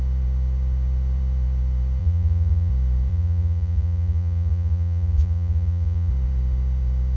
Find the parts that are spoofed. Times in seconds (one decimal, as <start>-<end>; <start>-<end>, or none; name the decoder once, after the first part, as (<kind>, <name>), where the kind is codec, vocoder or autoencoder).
2.0-2.7 (vocoder, Vocos); 3.1-6.1